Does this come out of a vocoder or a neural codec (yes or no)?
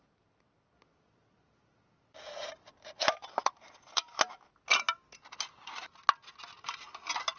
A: no